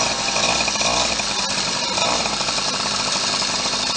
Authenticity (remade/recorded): recorded